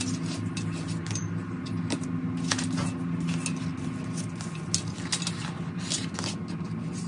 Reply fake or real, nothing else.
real